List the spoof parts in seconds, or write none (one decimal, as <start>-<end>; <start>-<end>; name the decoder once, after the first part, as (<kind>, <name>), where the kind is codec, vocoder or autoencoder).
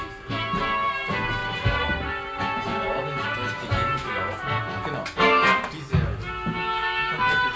1.4-4.6 (vocoder, BigVGAN v2)